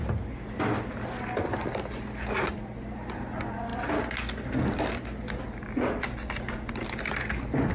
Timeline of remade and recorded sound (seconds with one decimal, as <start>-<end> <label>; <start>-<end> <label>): 0.0-7.7 recorded